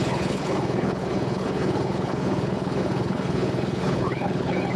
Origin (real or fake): fake